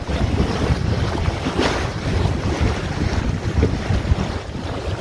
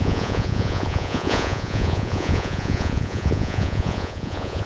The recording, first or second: first